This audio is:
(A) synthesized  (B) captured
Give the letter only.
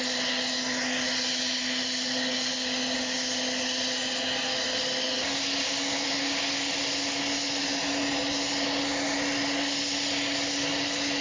B